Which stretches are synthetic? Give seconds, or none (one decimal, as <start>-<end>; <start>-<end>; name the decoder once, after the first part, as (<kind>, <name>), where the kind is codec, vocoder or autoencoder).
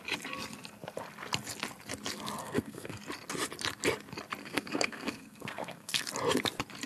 2.4-3.0 (codec, SNAC); 4.4-6.0